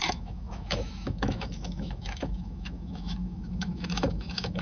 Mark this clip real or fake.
fake